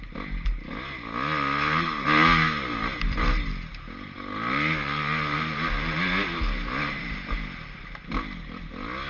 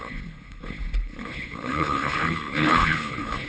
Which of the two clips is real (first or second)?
first